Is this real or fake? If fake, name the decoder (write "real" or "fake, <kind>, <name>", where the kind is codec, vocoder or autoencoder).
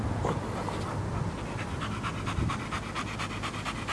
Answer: real